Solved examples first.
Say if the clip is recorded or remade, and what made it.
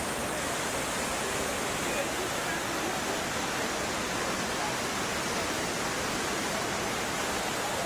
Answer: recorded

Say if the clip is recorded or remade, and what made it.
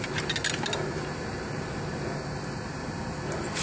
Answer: recorded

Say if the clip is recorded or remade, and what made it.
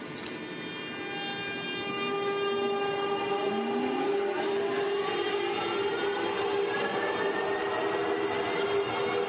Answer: recorded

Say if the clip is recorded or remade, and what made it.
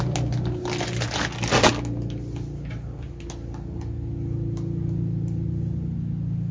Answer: recorded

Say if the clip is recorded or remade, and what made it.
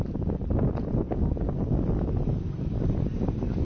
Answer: recorded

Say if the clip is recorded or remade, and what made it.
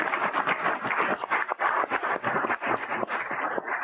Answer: recorded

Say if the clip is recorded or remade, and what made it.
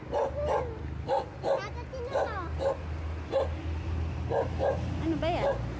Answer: recorded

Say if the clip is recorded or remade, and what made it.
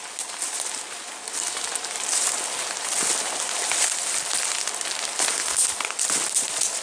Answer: recorded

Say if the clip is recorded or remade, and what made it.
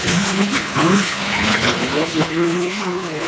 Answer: remade, codec, HILCodec